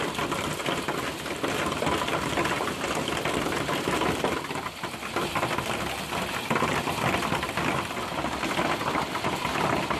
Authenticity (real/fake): real